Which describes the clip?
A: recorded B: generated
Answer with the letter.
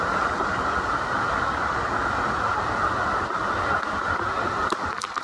A